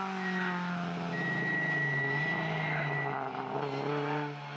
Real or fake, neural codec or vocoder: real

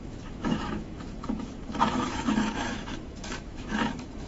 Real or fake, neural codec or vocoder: fake, autoencoder, DAC-VAE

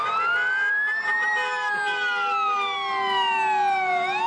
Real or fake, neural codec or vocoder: real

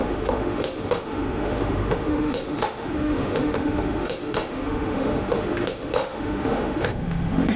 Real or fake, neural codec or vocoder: fake, autoencoder, DAC-VAE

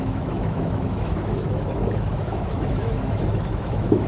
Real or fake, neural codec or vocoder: fake, autoencoder, DAC-VAE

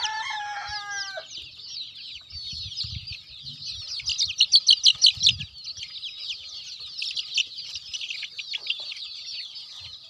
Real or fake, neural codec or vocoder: real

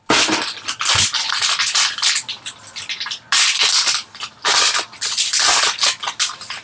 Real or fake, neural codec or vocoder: real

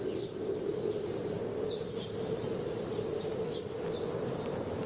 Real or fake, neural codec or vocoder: real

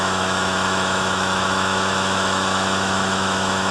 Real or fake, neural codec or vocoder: fake, autoencoder, DAC-VAE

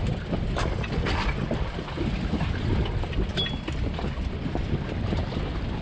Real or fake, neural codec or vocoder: real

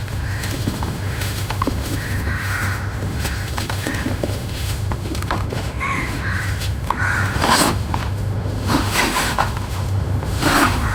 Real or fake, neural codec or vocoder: fake, autoencoder, DAC-VAE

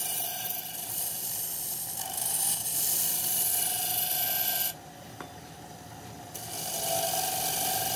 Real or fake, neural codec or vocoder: real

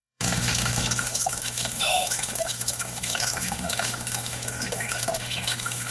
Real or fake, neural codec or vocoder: fake, autoencoder, DAC-VAE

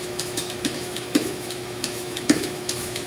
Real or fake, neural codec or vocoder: fake, autoencoder, DAC-VAE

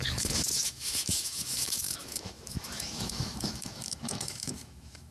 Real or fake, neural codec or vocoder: fake, autoencoder, DAC-VAE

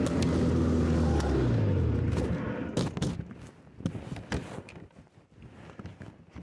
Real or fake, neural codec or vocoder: real